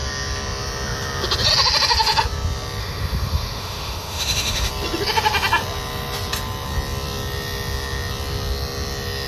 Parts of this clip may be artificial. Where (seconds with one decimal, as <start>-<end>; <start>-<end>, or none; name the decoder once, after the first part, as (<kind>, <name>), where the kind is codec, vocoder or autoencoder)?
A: 2.8-4.7 (autoencoder, DAC-VAE)